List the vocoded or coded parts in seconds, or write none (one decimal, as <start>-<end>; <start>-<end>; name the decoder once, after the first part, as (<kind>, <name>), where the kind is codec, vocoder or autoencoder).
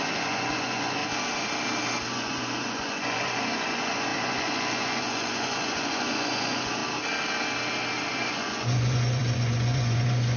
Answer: 0.0-1.0 (vocoder, Vocos); 2.1-6.8; 8.1-10.4